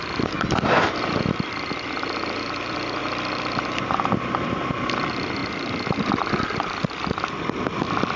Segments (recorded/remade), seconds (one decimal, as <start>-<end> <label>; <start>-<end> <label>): 0.0-8.2 recorded